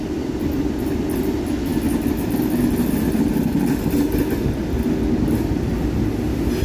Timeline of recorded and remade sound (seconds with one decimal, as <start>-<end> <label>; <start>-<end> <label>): 0.0-6.6 recorded